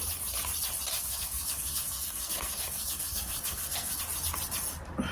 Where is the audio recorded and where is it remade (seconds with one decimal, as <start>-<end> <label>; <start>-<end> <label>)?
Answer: 0.0-0.9 recorded; 0.9-4.0 remade; 4.0-5.1 recorded